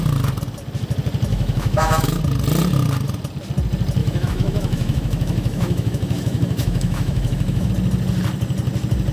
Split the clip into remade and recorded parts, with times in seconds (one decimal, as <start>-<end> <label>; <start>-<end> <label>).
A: 0.0-1.3 recorded; 1.3-2.2 remade; 2.2-4.0 recorded; 4.0-7.7 remade; 7.7-9.1 recorded